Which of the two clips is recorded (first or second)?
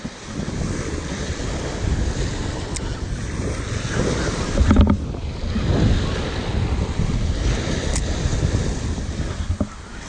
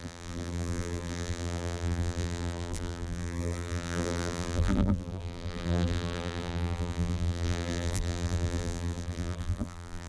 first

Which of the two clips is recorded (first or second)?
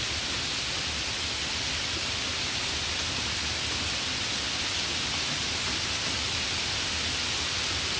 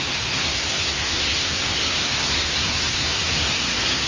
first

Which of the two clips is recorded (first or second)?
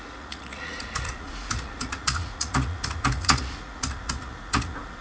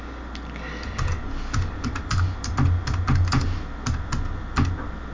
second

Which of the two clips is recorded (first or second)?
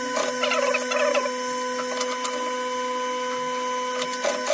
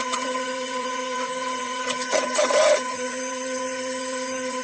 first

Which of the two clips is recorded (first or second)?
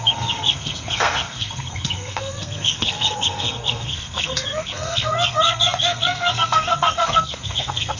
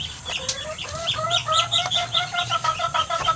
second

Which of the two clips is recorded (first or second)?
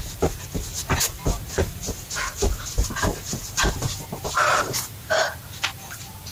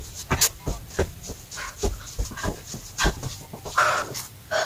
second